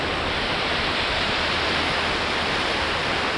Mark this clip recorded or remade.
recorded